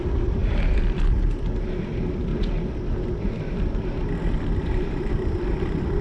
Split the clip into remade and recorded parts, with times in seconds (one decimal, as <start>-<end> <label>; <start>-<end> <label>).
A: 0.0-2.3 remade; 2.3-3.5 recorded; 3.5-4.0 remade; 4.0-4.6 recorded; 4.6-6.0 remade